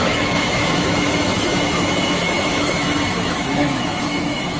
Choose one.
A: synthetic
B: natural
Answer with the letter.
A